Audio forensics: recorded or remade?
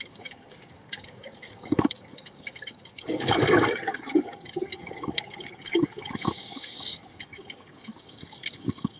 remade